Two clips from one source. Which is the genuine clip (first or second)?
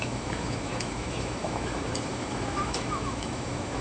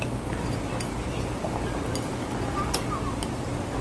second